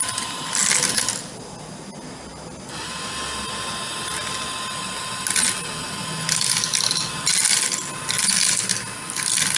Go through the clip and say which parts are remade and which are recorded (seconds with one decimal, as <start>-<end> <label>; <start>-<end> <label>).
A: 0.0-9.6 recorded